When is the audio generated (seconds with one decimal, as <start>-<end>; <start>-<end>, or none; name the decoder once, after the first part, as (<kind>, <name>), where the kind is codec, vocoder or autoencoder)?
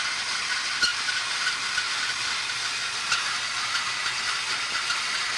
none